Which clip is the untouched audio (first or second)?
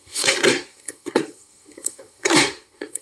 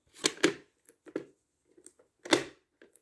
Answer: second